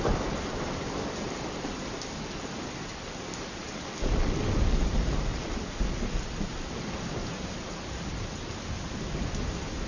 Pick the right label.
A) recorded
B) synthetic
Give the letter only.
B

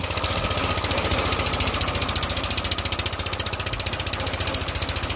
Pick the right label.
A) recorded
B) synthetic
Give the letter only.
A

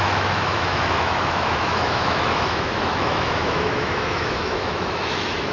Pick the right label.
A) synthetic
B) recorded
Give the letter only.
A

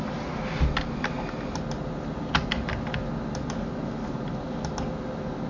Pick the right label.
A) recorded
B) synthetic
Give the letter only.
A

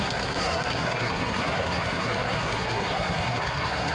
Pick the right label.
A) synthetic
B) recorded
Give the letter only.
A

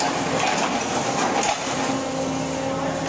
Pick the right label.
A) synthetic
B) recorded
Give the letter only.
B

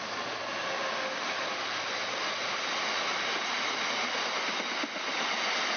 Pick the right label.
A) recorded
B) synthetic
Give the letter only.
A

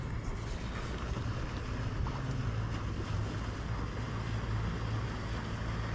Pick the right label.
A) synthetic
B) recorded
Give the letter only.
B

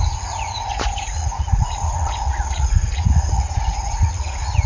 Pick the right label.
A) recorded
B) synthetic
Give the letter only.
B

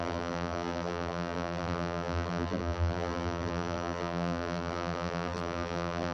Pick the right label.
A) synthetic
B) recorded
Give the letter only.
A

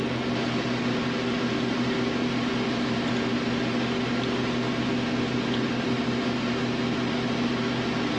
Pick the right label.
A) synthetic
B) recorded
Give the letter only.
B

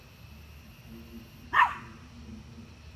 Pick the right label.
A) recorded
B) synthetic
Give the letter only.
A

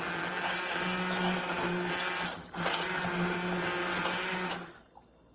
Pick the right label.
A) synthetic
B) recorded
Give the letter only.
B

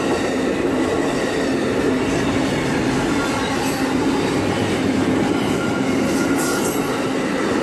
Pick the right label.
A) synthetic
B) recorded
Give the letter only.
B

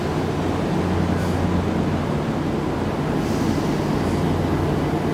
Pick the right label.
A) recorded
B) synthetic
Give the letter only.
A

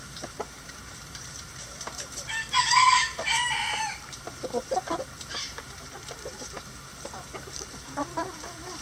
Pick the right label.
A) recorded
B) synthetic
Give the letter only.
B